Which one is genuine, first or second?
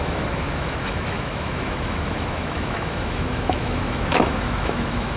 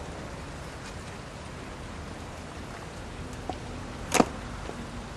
second